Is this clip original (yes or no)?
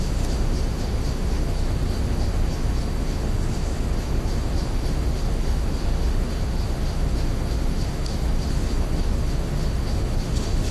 no